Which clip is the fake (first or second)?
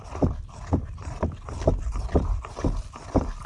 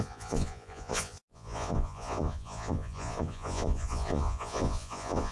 second